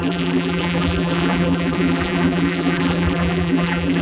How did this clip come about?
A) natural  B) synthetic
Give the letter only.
B